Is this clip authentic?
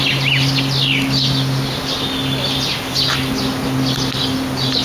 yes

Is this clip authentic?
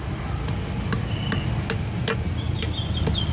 yes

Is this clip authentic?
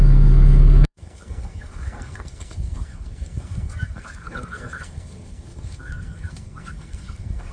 no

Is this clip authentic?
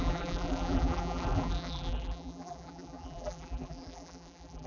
no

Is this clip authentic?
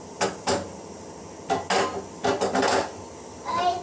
yes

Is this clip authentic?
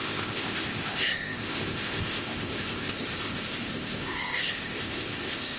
no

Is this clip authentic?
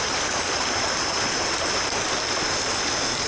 yes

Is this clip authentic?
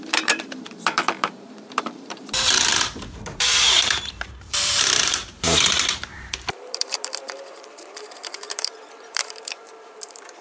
no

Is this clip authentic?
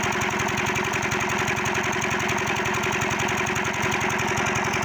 yes